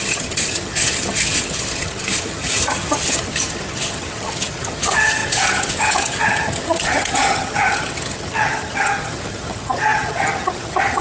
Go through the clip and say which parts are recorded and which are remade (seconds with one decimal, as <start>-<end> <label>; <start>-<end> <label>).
0.0-11.0 remade

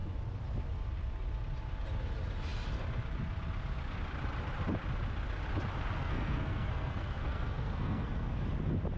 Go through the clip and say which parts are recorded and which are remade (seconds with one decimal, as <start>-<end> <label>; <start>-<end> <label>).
0.0-6.0 recorded; 6.0-8.4 remade; 8.4-9.0 recorded

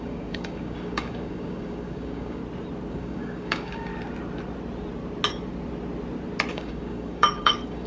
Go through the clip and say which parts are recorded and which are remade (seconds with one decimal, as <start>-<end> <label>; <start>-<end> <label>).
0.0-2.4 remade; 2.4-2.9 recorded; 2.9-3.9 remade; 3.9-6.5 recorded; 6.5-7.9 remade

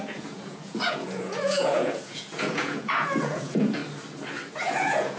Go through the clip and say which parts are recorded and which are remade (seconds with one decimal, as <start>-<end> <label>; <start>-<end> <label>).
0.0-3.8 remade; 3.8-4.5 recorded; 4.5-5.2 remade

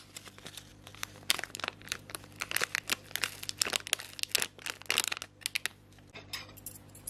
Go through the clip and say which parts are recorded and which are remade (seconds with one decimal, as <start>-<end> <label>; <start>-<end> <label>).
0.0-0.7 recorded; 0.7-2.5 remade; 2.5-5.7 recorded; 5.7-7.1 remade

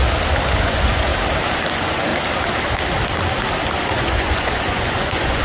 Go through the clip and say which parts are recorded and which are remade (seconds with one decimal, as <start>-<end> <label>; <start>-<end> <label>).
0.0-0.5 recorded; 0.5-1.1 remade; 1.1-1.7 recorded; 1.7-2.1 remade; 2.1-3.8 recorded; 3.8-5.4 remade

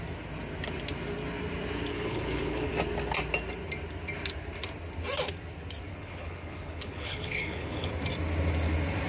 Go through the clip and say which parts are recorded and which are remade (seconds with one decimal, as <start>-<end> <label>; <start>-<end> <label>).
0.0-1.9 recorded; 1.9-2.7 remade; 2.7-5.9 recorded; 5.9-7.9 remade; 7.9-9.1 recorded

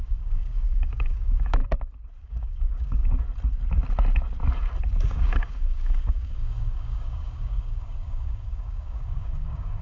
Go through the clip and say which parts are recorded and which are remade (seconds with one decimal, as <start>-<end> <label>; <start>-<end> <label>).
0.0-1.6 remade; 1.6-2.2 recorded; 2.2-3.0 remade; 3.0-5.0 recorded; 5.0-9.8 remade